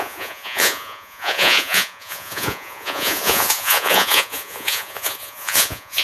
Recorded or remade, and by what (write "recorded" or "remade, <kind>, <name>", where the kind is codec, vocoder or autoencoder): remade, vocoder, Vocos